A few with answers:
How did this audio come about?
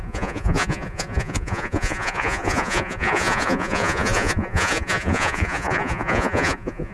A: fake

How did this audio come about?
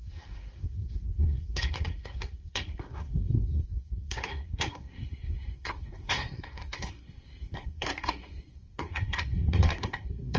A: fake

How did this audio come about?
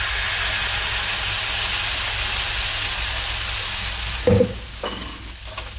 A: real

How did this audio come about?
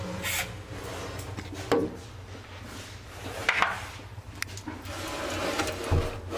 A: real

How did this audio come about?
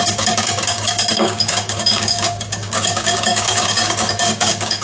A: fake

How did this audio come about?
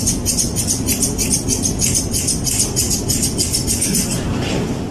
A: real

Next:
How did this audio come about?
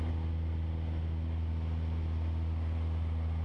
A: real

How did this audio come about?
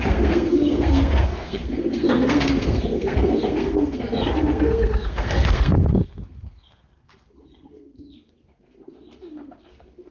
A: fake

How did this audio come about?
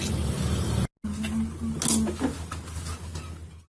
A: real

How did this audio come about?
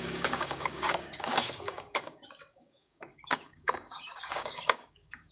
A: fake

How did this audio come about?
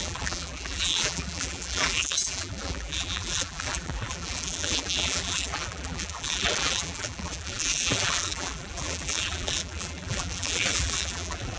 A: fake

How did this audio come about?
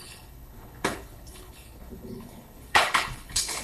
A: fake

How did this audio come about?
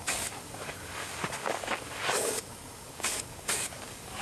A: fake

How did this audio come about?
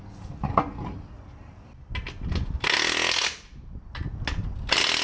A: real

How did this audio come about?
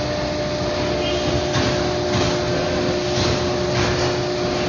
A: real